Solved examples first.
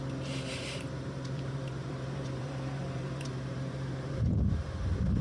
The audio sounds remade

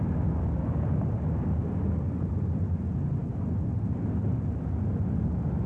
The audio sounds recorded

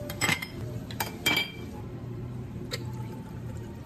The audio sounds remade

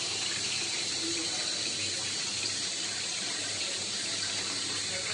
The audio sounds remade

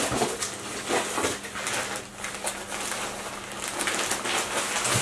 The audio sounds recorded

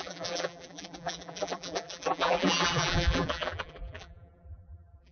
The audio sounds remade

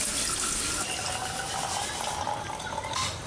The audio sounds recorded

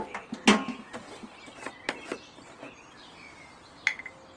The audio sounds recorded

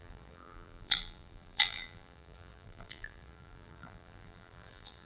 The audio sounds remade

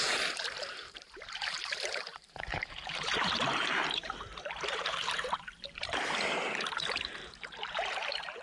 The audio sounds remade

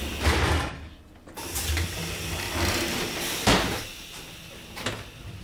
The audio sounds recorded